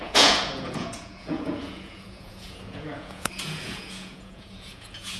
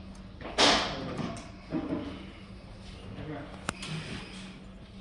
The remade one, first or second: first